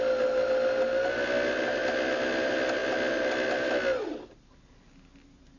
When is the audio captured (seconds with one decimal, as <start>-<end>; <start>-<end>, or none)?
0.0-5.6